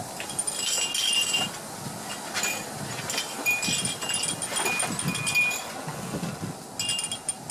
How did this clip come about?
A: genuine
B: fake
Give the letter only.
A